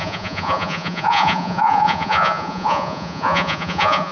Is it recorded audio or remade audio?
remade